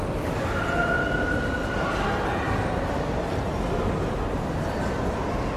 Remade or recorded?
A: recorded